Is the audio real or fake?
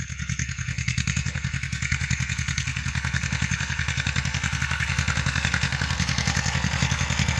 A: fake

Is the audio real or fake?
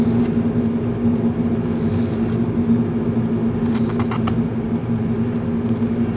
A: real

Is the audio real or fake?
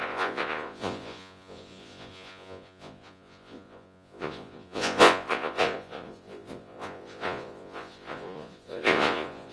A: fake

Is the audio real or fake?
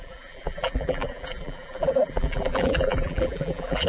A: fake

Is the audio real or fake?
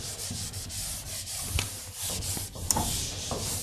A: fake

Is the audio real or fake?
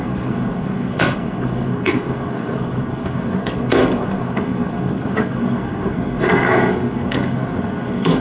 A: fake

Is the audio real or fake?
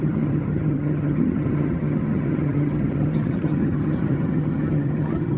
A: fake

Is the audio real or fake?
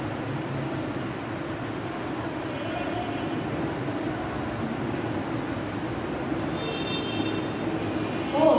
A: real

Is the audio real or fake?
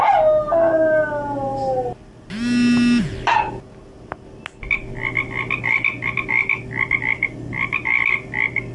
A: real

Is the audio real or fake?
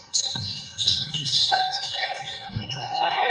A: fake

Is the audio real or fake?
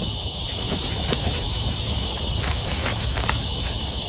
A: fake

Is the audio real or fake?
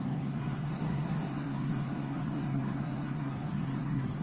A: fake